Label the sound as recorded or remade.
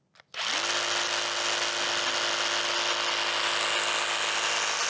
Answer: recorded